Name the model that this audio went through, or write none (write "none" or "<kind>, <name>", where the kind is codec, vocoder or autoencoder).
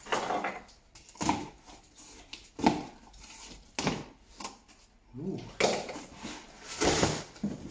none